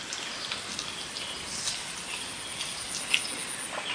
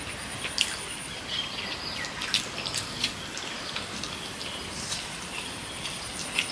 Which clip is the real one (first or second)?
first